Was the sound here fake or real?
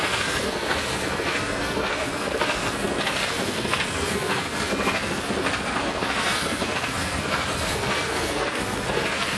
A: fake